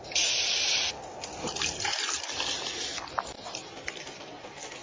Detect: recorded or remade recorded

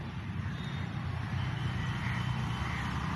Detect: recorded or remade remade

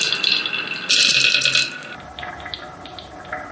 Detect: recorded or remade recorded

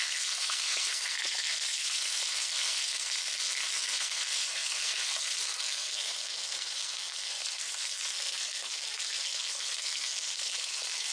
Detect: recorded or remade remade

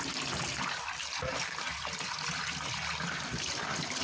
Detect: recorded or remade recorded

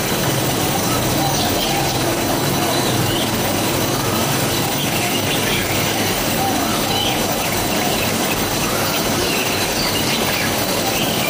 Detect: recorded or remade remade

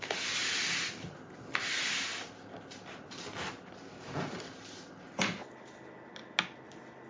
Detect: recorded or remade recorded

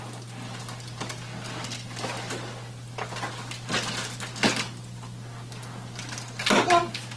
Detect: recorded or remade recorded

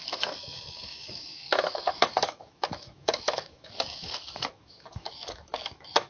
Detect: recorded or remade remade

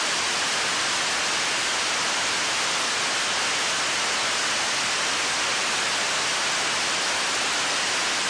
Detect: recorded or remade recorded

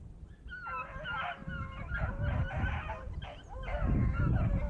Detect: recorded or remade recorded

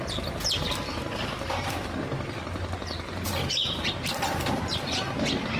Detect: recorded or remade remade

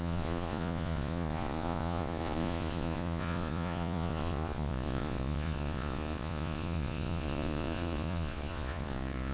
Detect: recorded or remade remade